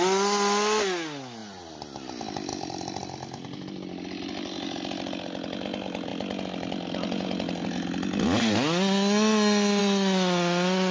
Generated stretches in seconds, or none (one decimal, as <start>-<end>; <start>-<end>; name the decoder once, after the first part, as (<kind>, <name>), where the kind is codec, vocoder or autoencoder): 1.4-2.1 (vocoder, BigVGAN v2); 2.5-3.0